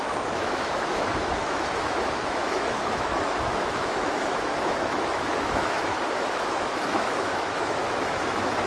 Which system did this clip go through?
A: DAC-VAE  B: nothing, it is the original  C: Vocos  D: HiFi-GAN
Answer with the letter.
A